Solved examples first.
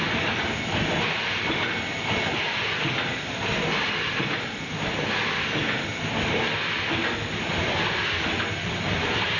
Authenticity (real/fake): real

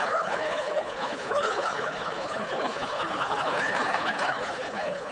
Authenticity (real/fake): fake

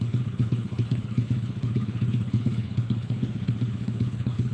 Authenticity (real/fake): fake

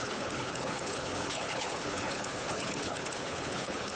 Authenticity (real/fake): fake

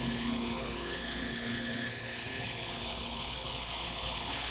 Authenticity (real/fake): fake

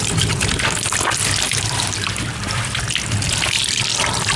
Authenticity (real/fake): real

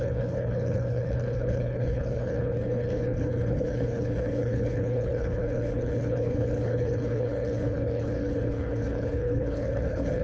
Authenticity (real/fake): fake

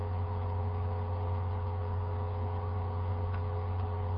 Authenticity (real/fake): fake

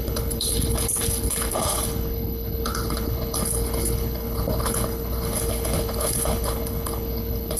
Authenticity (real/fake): fake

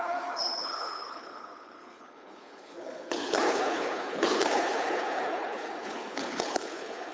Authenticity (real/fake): fake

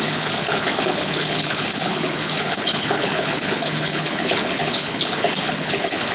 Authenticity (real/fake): fake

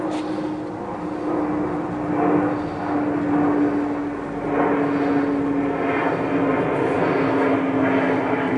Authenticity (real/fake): real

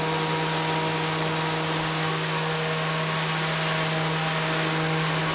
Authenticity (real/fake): real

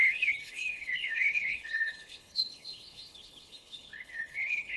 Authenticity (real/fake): fake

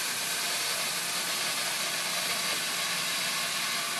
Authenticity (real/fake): real